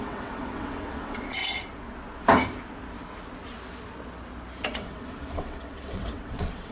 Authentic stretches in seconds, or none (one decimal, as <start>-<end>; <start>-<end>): 1.4-4.6